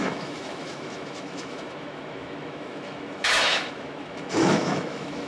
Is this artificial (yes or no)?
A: yes